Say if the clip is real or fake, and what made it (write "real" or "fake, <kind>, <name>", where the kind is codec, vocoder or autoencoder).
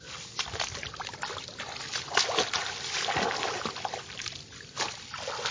real